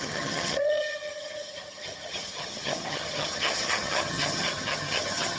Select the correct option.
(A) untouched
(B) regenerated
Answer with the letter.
B